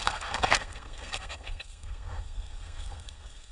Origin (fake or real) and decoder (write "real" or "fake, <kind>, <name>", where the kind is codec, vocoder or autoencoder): fake, codec, SNAC